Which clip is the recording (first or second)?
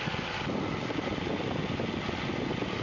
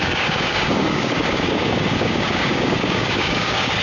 first